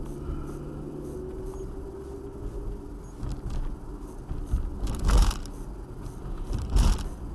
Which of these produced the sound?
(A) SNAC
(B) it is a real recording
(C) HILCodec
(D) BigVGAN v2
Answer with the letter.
B